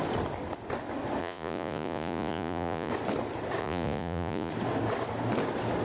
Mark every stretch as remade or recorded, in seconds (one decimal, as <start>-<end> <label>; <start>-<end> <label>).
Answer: 0.0-1.2 recorded; 1.2-2.9 remade; 2.9-3.6 recorded; 3.6-4.5 remade; 4.5-5.8 recorded